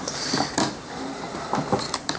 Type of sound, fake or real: fake